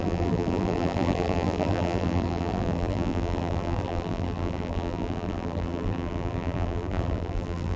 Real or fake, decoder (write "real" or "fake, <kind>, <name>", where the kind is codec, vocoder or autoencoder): fake, vocoder, BigVGAN v2